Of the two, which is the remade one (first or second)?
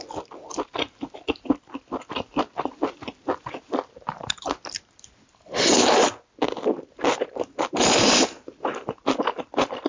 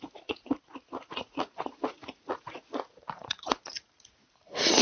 second